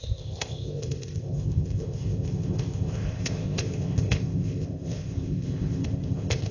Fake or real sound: fake